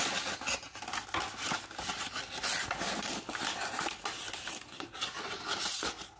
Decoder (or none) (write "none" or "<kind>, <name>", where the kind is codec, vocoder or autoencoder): none